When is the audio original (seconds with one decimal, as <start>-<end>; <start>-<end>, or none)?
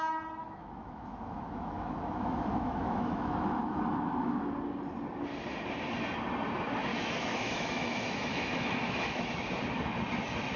0.0-0.4; 4.5-6.9; 9.3-10.6